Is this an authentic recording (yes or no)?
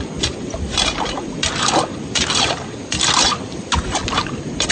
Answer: yes